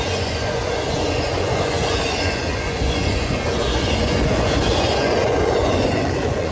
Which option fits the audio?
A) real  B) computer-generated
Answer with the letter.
B